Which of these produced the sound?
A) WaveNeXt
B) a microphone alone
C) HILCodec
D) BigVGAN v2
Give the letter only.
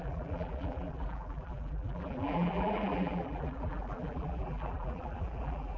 D